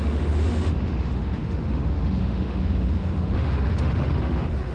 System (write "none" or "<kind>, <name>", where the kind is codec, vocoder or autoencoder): autoencoder, DAC-VAE